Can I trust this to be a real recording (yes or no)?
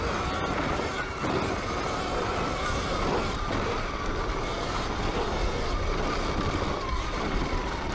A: yes